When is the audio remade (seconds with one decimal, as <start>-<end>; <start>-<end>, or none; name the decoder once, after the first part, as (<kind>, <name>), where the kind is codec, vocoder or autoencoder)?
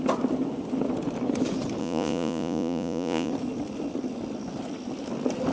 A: 1.8-3.3 (vocoder, Vocos)